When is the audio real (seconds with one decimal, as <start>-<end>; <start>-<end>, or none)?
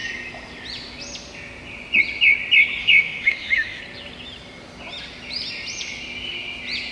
0.0-2.8; 3.8-6.9